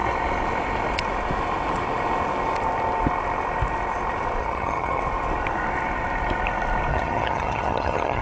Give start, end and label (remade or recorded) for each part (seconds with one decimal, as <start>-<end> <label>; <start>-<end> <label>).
0.0-4.4 recorded; 4.4-5.0 remade; 5.0-6.9 recorded; 6.9-8.2 remade